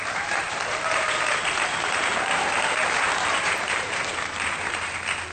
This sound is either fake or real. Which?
fake